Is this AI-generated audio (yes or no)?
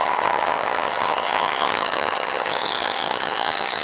yes